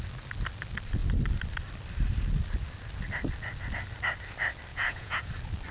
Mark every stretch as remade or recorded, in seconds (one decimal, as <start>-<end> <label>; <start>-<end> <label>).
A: 0.0-4.7 recorded; 4.7-5.3 remade; 5.3-5.7 recorded